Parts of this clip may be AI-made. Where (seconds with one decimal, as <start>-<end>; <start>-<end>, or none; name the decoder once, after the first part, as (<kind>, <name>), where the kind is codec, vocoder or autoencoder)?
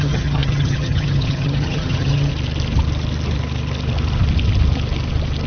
0.0-2.3 (vocoder, HiFi-GAN)